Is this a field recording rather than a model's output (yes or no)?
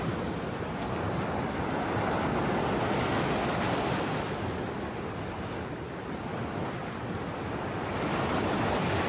yes